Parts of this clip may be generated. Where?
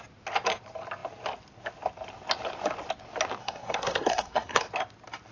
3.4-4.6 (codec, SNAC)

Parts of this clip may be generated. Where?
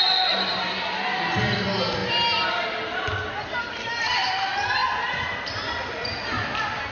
none